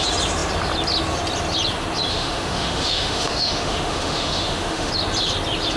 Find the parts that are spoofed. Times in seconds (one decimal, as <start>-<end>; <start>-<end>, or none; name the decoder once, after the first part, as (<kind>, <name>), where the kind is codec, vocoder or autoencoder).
2.1-4.9 (autoencoder, DAC-VAE)